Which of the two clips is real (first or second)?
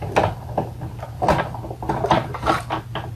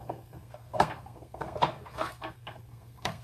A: first